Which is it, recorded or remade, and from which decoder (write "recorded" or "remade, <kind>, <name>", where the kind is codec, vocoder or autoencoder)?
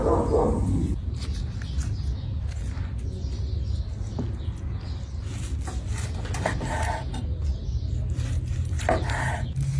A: recorded